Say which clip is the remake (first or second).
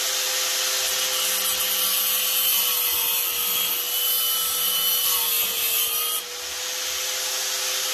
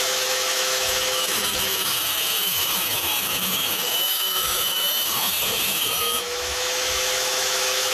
second